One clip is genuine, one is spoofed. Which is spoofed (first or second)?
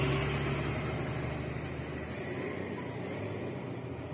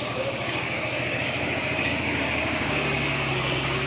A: second